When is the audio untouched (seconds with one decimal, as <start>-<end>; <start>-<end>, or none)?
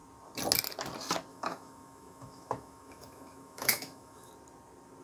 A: 0.0-1.3; 4.3-5.0